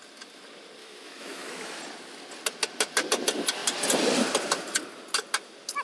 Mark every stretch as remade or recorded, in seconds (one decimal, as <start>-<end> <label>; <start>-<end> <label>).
0.0-0.8 recorded; 0.8-1.8 remade; 1.8-5.8 recorded